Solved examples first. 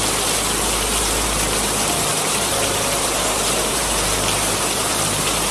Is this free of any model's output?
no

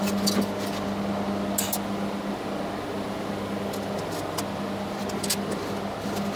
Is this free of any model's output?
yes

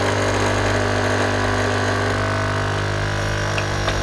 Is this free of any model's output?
yes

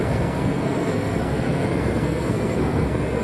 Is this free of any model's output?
no